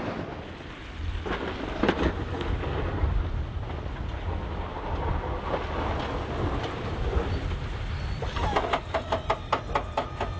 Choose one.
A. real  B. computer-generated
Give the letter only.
A